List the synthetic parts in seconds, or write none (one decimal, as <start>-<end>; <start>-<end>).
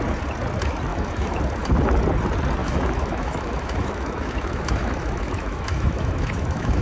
0.9-1.4; 2.6-6.8